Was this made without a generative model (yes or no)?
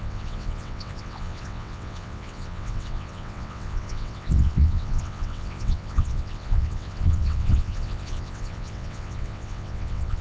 no